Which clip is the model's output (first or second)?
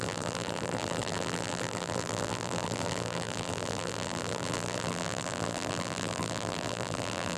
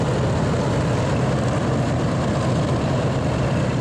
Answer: first